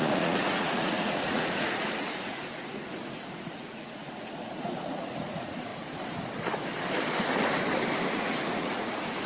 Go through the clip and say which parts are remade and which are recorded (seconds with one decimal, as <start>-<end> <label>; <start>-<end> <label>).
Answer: 0.0-5.7 remade; 5.7-8.1 recorded; 8.1-9.3 remade